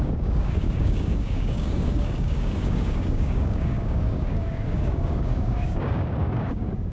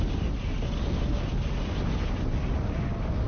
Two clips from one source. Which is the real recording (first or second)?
second